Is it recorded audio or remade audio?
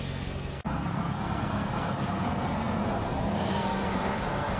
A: remade